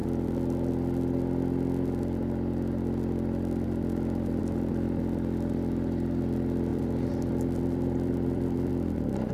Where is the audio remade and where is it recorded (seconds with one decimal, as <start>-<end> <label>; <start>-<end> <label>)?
0.0-6.7 recorded; 6.7-8.7 remade; 8.7-9.3 recorded